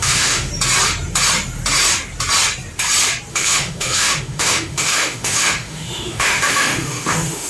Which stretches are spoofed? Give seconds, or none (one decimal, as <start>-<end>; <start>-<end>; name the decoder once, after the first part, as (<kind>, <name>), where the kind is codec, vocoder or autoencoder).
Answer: 0.0-0.5 (autoencoder, DAC-VAE); 3.3-7.5